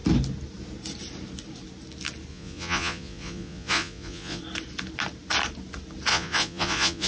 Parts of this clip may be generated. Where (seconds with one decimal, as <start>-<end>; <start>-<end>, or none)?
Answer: 2.3-4.4; 6.1-7.1